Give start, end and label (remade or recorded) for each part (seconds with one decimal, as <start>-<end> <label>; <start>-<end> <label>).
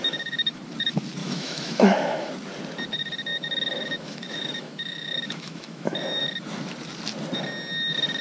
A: 0.0-0.6 remade; 0.6-1.2 recorded; 1.2-2.3 remade; 2.3-3.3 recorded; 3.3-6.2 remade; 6.2-8.2 recorded